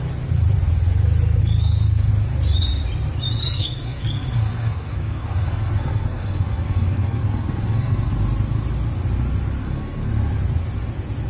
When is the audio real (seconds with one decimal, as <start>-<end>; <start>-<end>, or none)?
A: 0.0-1.4; 2.1-3.4; 8.1-9.6; 10.1-11.3

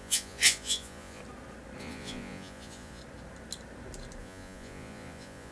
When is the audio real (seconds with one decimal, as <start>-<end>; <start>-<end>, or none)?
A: 1.2-1.8; 3.0-4.2

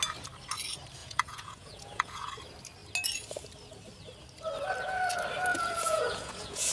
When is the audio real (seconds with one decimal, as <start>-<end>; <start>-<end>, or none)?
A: 0.0-1.0; 2.3-5.5

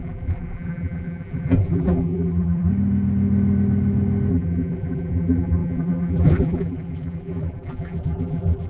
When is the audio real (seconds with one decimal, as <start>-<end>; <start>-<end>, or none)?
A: 2.7-4.3

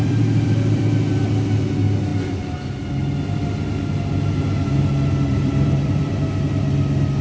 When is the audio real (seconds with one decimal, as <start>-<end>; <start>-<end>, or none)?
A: 0.8-5.3; 6.1-7.2